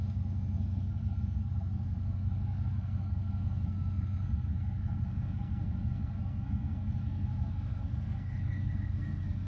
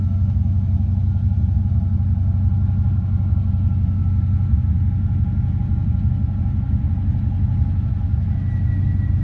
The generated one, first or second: first